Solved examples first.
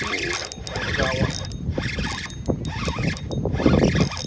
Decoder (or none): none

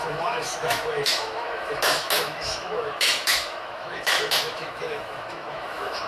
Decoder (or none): autoencoder, DAC-VAE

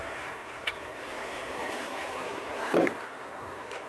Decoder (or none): codec, SNAC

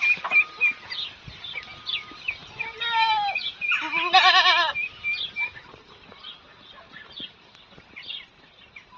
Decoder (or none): none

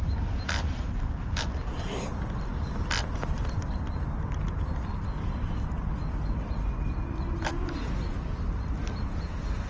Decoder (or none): none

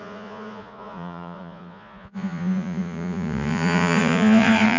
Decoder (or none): vocoder, Vocos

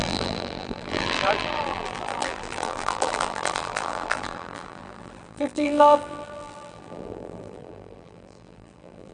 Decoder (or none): vocoder, BigVGAN v2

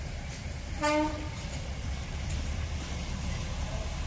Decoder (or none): none